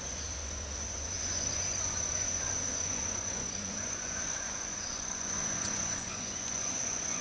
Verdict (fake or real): fake